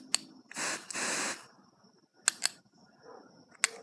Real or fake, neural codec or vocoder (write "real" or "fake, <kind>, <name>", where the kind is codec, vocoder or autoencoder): real